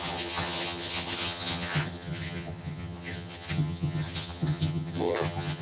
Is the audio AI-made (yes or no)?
yes